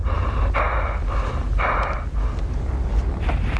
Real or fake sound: real